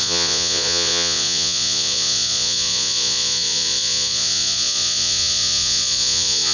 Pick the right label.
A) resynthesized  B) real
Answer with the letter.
A